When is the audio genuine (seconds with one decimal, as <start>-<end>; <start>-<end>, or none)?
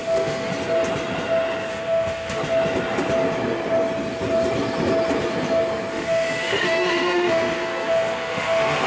0.5-1.7; 2.4-5.9